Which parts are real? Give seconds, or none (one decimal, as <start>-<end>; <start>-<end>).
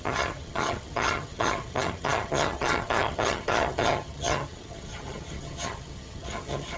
none